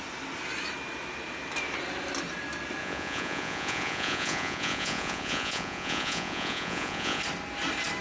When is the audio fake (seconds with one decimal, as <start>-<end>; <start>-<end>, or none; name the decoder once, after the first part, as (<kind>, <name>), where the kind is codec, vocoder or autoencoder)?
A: 2.8-7.2 (vocoder, Vocos)